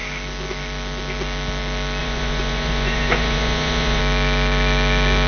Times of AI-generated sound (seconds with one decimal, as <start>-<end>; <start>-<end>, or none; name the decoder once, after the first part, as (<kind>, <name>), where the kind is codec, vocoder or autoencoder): 2.0-4.0 (vocoder, Vocos)